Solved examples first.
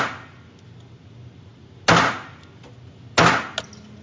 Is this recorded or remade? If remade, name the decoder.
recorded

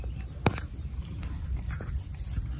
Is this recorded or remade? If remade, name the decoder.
recorded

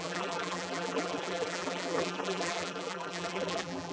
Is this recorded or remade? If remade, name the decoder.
remade, vocoder, BigVGAN v2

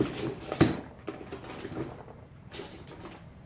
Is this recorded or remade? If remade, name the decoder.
recorded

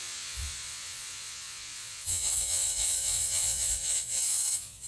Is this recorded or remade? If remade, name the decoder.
remade, vocoder, Vocos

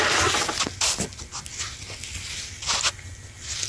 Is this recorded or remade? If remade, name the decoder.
recorded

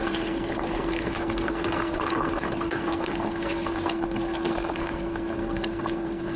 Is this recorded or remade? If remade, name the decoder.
remade, codec, SNAC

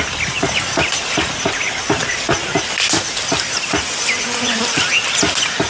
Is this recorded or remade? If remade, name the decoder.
recorded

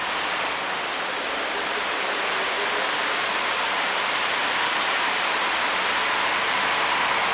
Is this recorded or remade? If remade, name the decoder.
recorded